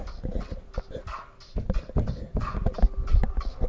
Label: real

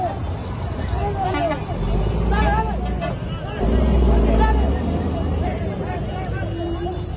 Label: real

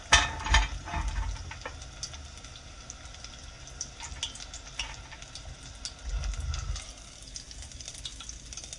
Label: real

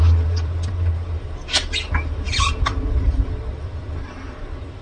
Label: fake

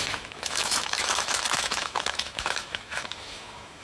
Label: fake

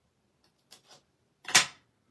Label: real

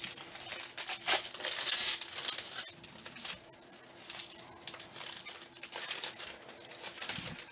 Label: real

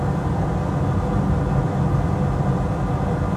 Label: real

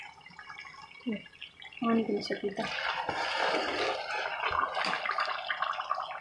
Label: real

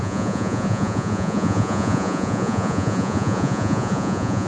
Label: fake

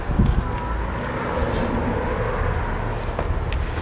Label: real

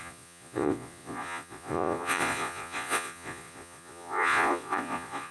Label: fake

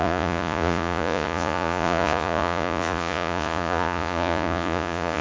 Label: fake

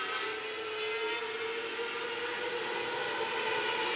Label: real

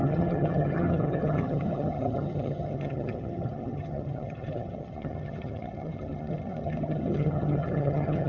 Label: fake